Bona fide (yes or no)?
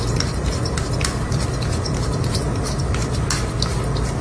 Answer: yes